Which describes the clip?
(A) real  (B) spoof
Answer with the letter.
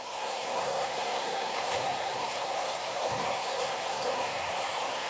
B